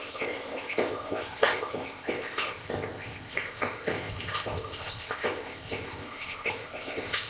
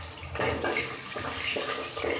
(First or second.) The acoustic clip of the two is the second